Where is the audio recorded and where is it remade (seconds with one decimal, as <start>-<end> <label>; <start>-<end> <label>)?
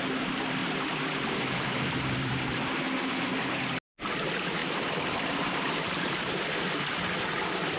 0.0-0.6 remade; 0.6-1.3 recorded; 1.3-3.3 remade; 3.3-4.1 recorded; 4.1-7.8 remade